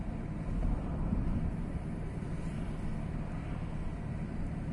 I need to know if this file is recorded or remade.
remade